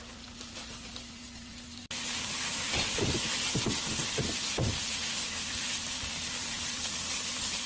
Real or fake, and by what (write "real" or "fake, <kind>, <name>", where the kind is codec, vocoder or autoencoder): real